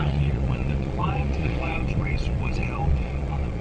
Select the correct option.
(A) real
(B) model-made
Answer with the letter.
B